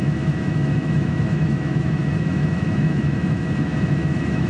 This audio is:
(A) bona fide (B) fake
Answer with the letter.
B